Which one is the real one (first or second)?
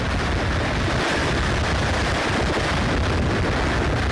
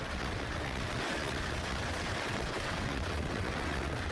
first